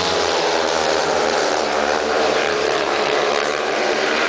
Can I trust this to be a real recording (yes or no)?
no